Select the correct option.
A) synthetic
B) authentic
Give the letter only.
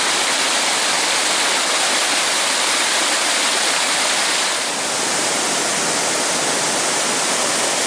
B